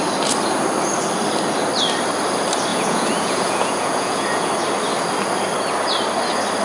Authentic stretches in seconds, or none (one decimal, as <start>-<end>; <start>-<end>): 0.0-2.7; 4.5-6.6